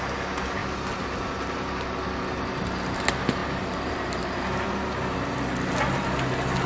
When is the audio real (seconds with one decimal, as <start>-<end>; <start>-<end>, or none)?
0.0-3.4; 5.0-6.7